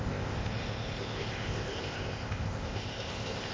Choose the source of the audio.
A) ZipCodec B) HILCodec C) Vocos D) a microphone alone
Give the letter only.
A